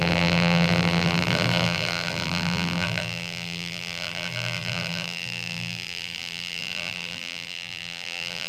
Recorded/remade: remade